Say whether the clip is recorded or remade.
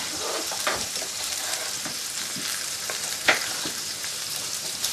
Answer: remade